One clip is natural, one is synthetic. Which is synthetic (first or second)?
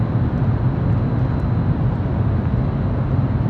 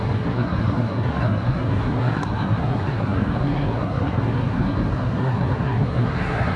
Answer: second